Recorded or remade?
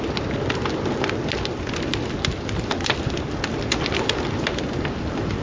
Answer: recorded